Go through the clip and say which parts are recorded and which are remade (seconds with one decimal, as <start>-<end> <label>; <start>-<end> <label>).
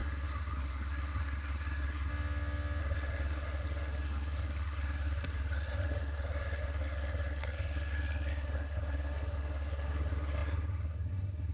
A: 0.0-2.1 remade; 2.1-2.8 recorded; 2.8-11.5 remade